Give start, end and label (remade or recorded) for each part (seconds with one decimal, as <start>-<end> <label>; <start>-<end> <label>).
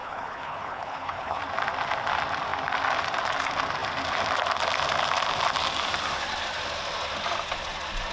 0.0-1.4 remade; 1.4-8.1 recorded